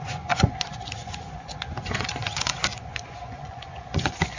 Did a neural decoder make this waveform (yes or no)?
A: yes